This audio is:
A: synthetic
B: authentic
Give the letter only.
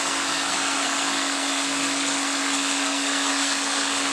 A